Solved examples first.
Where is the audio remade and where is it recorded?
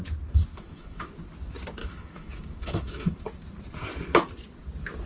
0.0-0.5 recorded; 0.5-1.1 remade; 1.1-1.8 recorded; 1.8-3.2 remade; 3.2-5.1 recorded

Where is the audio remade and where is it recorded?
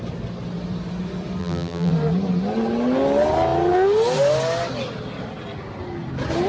0.0-1.4 recorded; 1.4-1.9 remade; 1.9-6.5 recorded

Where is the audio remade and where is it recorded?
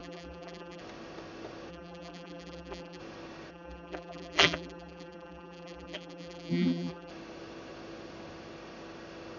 0.0-0.8 remade; 0.8-1.7 recorded; 1.7-3.0 remade; 3.0-3.5 recorded; 3.5-7.1 remade; 7.1-9.4 recorded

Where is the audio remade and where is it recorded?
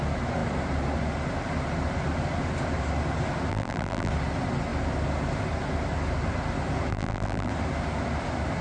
0.0-3.5 recorded; 3.5-4.1 remade; 4.1-6.9 recorded; 6.9-7.5 remade; 7.5-8.6 recorded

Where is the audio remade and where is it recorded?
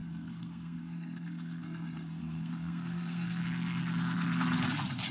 0.0-3.4 remade; 3.4-5.1 recorded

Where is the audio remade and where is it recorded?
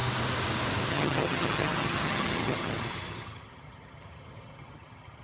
0.0-0.9 recorded; 0.9-5.2 remade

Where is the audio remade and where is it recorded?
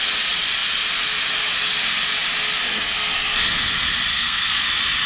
0.0-4.1 recorded; 4.1-4.6 remade; 4.6-5.1 recorded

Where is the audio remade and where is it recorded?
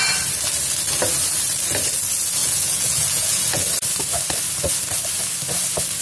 0.0-2.4 recorded; 2.4-3.6 remade; 3.6-6.0 recorded